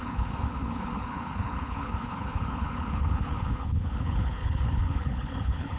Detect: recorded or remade remade